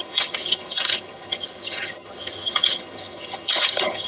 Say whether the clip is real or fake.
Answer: fake